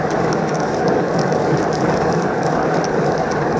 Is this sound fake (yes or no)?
yes